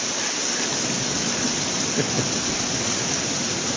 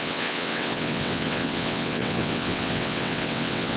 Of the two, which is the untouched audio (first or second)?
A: first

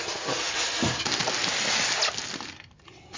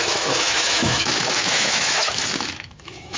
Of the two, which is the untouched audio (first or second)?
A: first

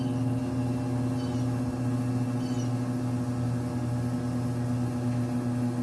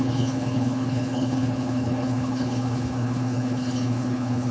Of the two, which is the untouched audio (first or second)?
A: first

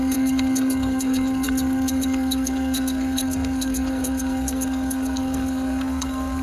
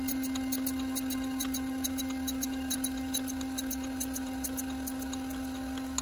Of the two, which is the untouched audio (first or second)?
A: second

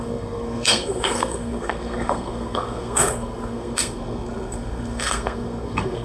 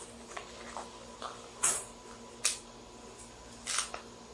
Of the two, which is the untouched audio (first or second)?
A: second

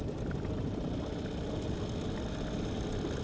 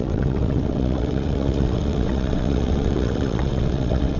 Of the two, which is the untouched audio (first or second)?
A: first